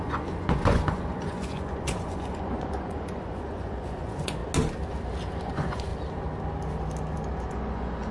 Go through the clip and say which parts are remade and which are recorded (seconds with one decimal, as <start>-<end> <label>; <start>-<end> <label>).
0.0-4.4 remade; 4.4-5.5 recorded; 5.5-5.9 remade; 5.9-7.5 recorded; 7.5-8.1 remade